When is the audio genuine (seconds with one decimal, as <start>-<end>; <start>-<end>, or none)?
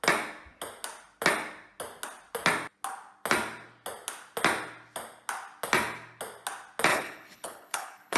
0.0-6.9